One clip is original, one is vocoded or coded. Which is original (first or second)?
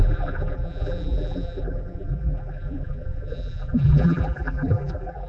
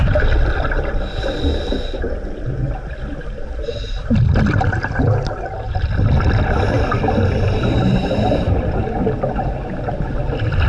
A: second